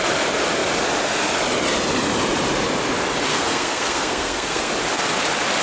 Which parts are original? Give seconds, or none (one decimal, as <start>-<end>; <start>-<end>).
0.0-3.3; 4.7-5.6